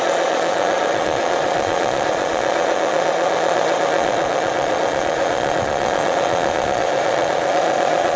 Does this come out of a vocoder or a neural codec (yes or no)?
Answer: yes